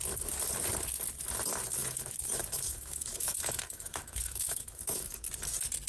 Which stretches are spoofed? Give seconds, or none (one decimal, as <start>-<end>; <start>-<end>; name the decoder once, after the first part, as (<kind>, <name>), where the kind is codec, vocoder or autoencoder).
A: 1.8-5.3 (autoencoder, DAC-VAE)